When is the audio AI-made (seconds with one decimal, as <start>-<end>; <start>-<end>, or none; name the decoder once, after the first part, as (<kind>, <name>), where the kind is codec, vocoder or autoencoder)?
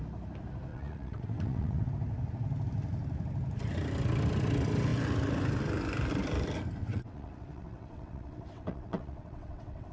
0.7-1.9 (vocoder, WaveNeXt); 6.8-9.9